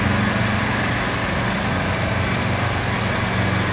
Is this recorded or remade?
recorded